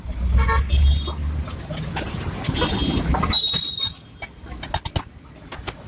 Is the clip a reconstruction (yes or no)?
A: no